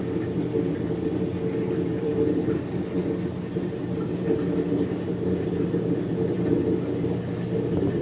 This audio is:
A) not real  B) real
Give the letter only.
B